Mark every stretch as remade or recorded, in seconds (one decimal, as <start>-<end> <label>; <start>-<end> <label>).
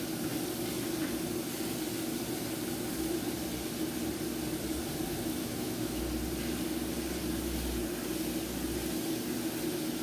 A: 0.0-5.4 recorded; 5.4-6.0 remade; 6.0-10.0 recorded